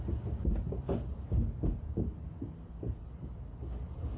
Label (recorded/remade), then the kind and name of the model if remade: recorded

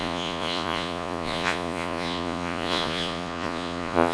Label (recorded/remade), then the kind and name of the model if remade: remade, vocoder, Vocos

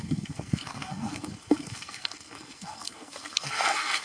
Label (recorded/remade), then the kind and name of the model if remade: remade, codec, SNAC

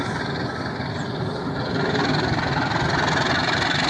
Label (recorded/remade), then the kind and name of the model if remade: recorded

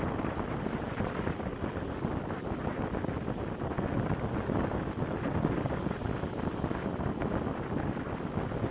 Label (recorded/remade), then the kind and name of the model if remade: recorded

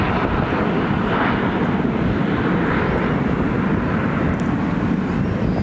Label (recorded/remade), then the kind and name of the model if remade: recorded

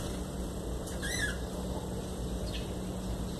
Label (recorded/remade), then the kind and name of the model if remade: recorded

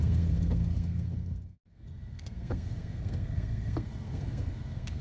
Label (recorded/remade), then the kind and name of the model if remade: remade, codec, SNAC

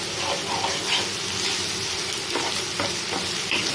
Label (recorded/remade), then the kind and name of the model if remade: recorded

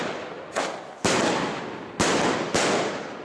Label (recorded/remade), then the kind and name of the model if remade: recorded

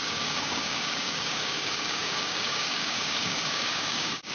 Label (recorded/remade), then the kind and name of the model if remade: remade, codec, DAC